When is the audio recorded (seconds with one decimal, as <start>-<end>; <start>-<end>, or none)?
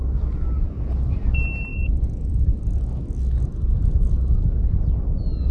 0.0-1.7; 2.6-3.7; 4.8-5.5